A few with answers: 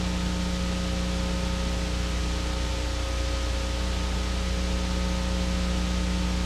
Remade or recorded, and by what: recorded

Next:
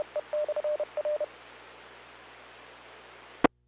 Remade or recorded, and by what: recorded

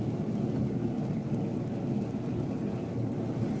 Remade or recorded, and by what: recorded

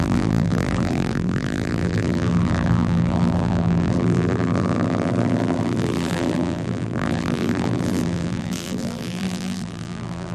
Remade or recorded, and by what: remade, vocoder, BigVGAN v2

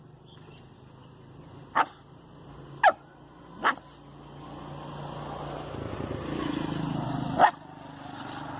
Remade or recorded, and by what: recorded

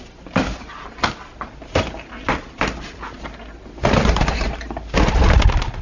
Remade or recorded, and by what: recorded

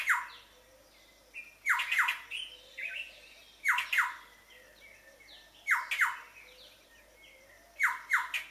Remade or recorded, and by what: recorded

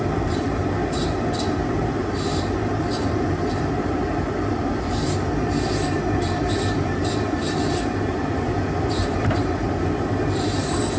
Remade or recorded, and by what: remade, vocoder, BigVGAN v2